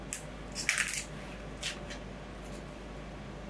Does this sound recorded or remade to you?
recorded